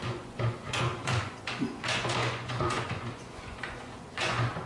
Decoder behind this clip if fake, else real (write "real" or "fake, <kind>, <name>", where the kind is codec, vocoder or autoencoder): fake, vocoder, Vocos